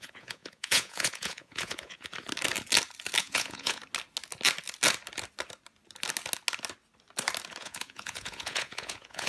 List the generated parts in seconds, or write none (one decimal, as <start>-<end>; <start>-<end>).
0.0-2.1; 3.2-3.8; 7.6-9.3